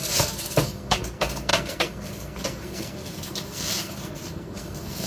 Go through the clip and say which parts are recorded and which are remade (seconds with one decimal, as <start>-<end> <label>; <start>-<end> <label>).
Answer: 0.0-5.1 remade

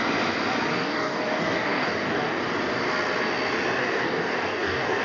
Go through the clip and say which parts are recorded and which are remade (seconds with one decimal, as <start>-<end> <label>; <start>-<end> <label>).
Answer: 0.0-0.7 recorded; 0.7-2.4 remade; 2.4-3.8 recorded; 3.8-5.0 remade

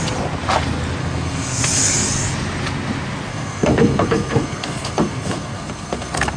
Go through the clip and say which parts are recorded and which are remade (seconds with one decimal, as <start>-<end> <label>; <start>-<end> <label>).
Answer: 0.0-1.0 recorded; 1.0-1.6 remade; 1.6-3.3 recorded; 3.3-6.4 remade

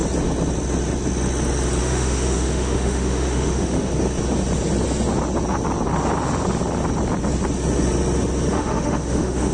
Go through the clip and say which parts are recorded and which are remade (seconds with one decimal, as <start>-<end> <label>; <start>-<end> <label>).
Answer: 0.0-1.8 recorded; 1.8-3.9 remade; 3.9-8.5 recorded; 8.5-9.5 remade

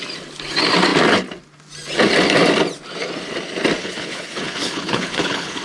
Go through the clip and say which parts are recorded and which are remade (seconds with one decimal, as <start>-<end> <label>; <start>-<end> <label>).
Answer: 0.0-3.8 recorded; 3.8-5.6 remade

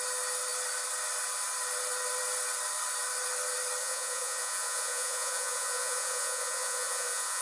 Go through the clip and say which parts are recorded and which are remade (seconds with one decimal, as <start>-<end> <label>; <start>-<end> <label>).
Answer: 0.0-3.8 recorded; 3.8-7.4 remade